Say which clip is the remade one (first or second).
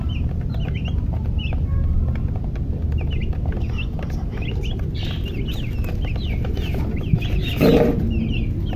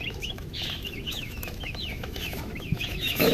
second